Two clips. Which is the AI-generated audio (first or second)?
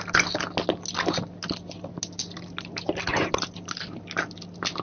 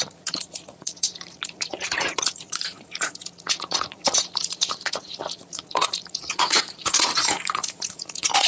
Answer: second